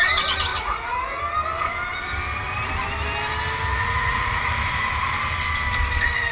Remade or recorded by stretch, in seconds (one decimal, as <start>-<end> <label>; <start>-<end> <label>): 0.0-0.5 recorded; 0.5-1.2 remade; 1.2-3.7 recorded; 3.7-4.5 remade; 4.5-6.3 recorded